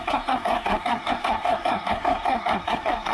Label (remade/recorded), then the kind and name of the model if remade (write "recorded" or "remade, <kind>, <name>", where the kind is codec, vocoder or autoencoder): remade, codec, SNAC